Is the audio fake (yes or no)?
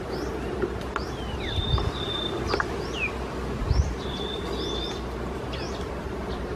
yes